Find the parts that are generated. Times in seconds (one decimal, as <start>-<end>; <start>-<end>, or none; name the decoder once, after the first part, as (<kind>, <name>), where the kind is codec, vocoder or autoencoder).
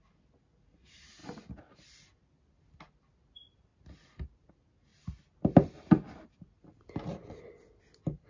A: 1.2-2.5 (vocoder, BigVGAN v2); 3.7-4.5; 4.9-6.9